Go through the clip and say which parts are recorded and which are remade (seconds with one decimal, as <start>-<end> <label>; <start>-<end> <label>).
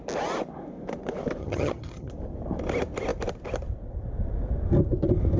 0.0-1.4 recorded; 1.4-2.1 remade; 2.1-5.4 recorded